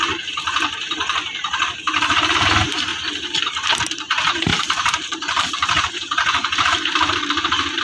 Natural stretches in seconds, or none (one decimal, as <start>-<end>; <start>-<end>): 2.9-3.4